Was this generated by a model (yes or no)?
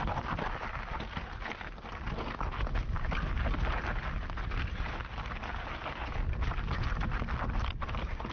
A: no